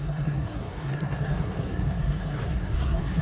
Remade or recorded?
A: remade